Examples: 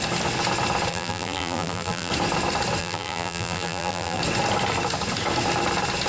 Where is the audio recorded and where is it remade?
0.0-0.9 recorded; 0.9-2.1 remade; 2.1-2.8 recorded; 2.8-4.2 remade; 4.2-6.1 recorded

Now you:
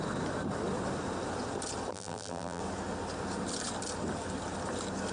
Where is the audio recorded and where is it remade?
0.0-1.9 recorded; 1.9-2.6 remade; 2.6-5.1 recorded

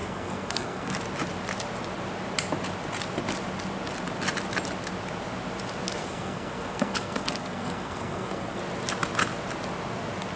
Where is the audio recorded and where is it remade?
0.0-1.0 remade; 1.0-6.0 recorded; 6.0-8.6 remade; 8.6-10.4 recorded

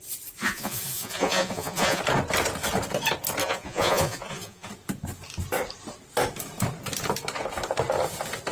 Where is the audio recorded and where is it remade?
0.0-0.4 recorded; 0.4-2.0 remade; 2.0-3.4 recorded; 3.4-4.7 remade; 4.7-8.5 recorded

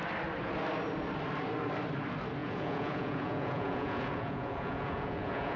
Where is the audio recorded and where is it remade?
0.0-2.4 recorded; 2.4-5.6 remade

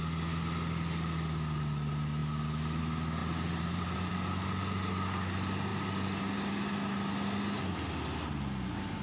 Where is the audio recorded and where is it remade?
0.0-3.2 recorded; 3.2-4.1 remade; 4.1-9.0 recorded